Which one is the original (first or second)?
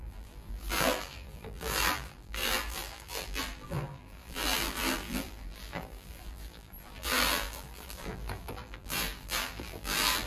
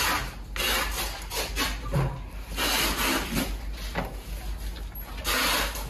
second